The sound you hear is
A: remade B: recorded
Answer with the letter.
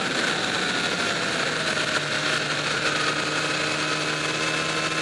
B